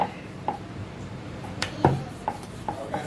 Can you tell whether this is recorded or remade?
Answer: remade